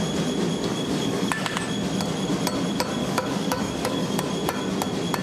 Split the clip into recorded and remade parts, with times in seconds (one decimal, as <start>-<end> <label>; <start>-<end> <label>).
0.0-0.7 recorded; 0.7-1.6 remade; 1.6-3.0 recorded; 3.0-4.2 remade; 4.2-5.2 recorded